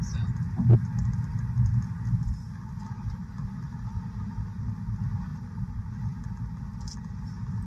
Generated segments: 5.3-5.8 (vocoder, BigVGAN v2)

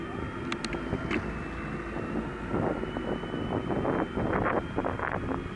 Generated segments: none

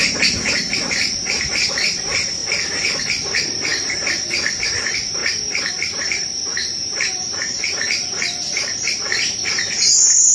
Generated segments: 0.0-5.2 (vocoder, BigVGAN v2); 5.7-10.3

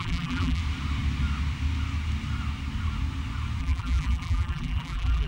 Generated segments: 0.0-0.6 (vocoder, BigVGAN v2); 3.6-5.3

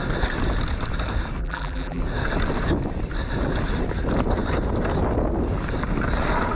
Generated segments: 1.4-2.0 (vocoder, BigVGAN v2)

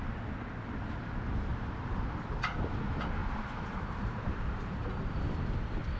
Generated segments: 1.5-2.1 (vocoder, BigVGAN v2); 3.2-4.9

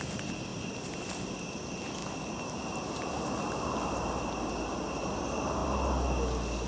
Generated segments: 0.5-1.0 (vocoder, BigVGAN v2); 2.0-4.2